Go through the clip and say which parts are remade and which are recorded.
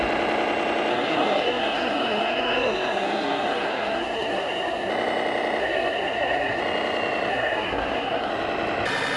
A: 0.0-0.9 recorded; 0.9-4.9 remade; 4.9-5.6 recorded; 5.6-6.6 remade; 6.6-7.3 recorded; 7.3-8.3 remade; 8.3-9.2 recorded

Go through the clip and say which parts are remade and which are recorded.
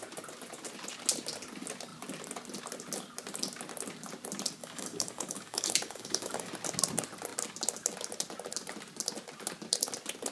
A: 0.0-4.6 recorded; 4.6-6.5 remade; 6.5-10.3 recorded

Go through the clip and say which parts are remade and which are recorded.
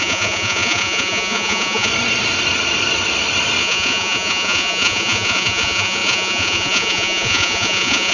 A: 0.0-1.9 remade; 1.9-3.6 recorded; 3.6-8.1 remade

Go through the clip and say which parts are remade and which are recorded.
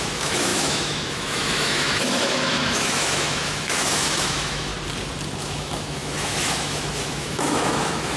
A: 0.0-4.7 remade; 4.7-5.4 recorded; 5.4-8.2 remade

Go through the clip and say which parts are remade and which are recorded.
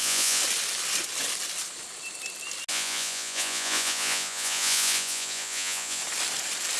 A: 0.0-0.4 remade; 0.4-2.7 recorded; 2.7-6.0 remade; 6.0-6.8 recorded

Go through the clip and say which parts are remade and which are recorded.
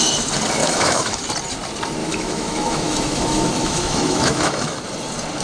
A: 0.0-0.6 recorded; 0.6-1.2 remade; 1.2-2.0 recorded; 2.0-4.8 remade; 4.8-5.4 recorded